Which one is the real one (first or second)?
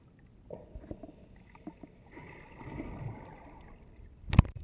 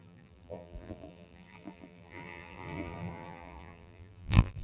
first